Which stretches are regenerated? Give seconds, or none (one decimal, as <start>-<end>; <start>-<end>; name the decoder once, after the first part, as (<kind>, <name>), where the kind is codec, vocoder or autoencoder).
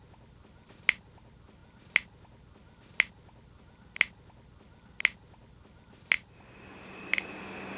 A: none